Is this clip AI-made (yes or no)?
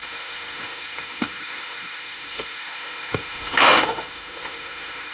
yes